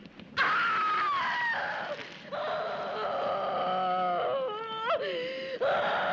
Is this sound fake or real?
real